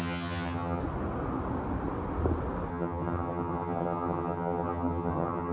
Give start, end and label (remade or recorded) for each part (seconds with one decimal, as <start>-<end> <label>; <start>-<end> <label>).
0.0-0.8 remade; 0.8-2.7 recorded; 2.7-5.5 remade